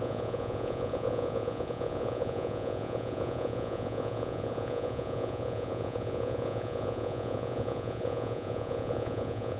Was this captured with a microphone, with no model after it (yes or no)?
no